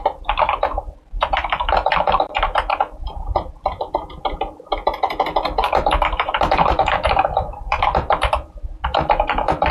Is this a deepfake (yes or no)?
yes